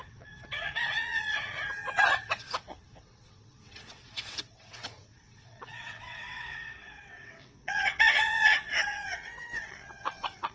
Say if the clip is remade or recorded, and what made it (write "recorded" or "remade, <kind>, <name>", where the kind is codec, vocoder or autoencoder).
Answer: remade, vocoder, WaveNeXt